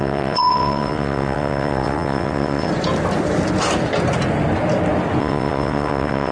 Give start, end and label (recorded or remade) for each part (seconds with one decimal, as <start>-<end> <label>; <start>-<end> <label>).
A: 0.0-2.7 remade; 2.7-5.2 recorded; 5.2-6.3 remade